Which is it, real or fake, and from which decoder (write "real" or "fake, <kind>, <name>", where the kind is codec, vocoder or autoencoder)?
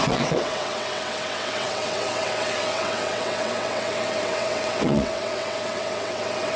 fake, vocoder, WaveNeXt